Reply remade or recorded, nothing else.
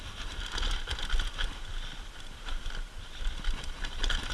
recorded